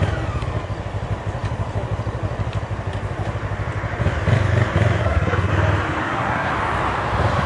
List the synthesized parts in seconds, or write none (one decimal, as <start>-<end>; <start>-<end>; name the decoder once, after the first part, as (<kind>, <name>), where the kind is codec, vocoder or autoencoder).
5.0-5.5 (codec, SNAC); 6.0-6.5